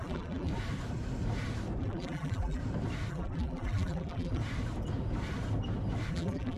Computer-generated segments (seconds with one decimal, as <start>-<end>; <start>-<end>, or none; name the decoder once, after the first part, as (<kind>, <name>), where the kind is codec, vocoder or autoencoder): 0.0-0.5 (vocoder, BigVGAN v2); 1.8-2.6; 3.1-4.4; 6.1-6.6